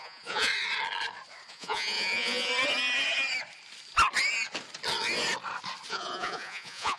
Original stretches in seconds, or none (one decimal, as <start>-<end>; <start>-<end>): 0.5-1.5; 2.5-5.9